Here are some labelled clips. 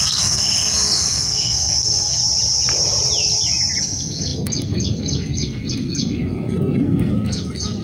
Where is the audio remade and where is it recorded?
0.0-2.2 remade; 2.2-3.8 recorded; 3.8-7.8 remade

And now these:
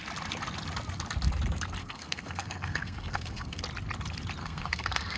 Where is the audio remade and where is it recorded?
0.0-1.8 recorded; 1.8-3.6 remade; 3.6-4.4 recorded; 4.4-5.2 remade

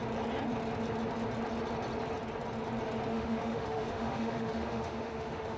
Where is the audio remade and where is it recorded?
0.0-3.1 recorded; 3.1-5.6 remade

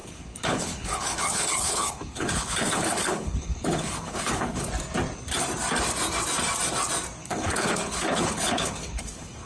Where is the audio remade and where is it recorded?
0.0-4.7 remade; 4.7-7.2 recorded; 7.2-9.5 remade